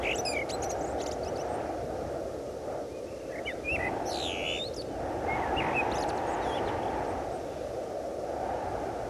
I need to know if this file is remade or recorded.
recorded